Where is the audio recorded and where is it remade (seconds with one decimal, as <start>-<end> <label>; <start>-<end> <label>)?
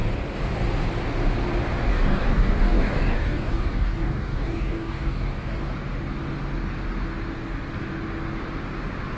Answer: 0.0-1.9 recorded; 1.9-5.7 remade; 5.7-9.2 recorded